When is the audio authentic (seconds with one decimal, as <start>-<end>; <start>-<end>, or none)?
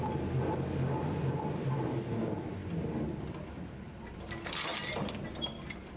0.0-6.0